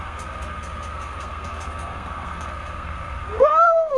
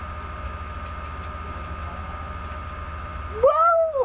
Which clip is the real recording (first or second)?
second